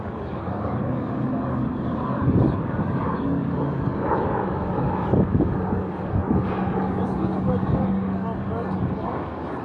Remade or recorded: remade